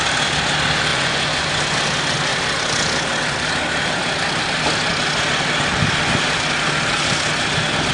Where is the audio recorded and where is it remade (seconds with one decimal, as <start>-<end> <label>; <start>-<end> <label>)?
0.0-0.9 recorded; 0.9-1.6 remade; 1.6-7.9 recorded